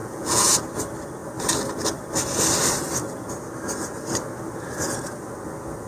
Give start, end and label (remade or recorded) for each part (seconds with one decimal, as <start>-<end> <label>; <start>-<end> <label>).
0.0-0.6 remade; 0.6-5.9 recorded